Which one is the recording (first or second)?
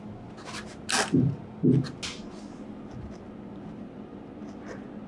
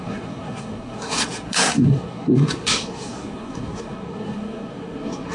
first